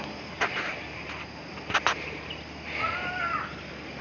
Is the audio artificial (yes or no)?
no